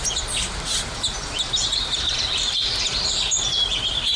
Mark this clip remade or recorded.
recorded